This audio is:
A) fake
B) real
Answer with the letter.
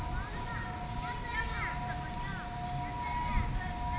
B